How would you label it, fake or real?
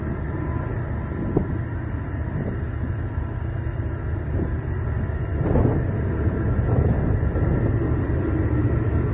real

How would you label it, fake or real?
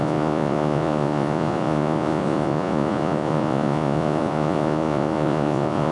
fake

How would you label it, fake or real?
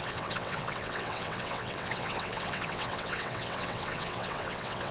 fake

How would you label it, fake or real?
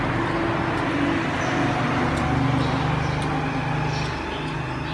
real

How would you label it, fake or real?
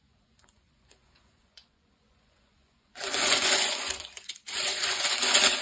fake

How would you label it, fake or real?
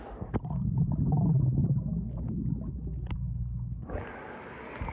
real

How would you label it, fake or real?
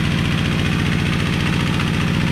real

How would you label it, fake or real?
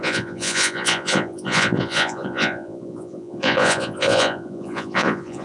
fake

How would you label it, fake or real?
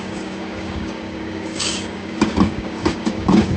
fake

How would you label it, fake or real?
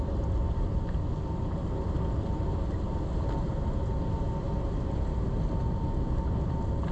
real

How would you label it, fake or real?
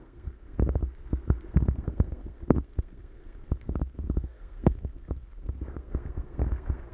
fake